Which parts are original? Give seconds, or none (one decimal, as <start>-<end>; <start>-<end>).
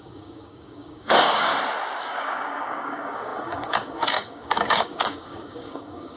1.5-2.0